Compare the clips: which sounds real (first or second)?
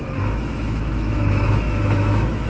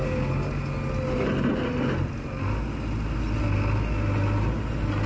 second